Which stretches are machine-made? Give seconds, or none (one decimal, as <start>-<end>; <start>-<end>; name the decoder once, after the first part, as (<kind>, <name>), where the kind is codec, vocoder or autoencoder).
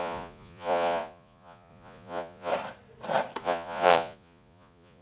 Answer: 0.0-2.5 (vocoder, Vocos); 3.4-5.0